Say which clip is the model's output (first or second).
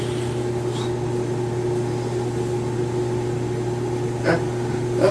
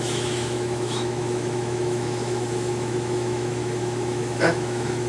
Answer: second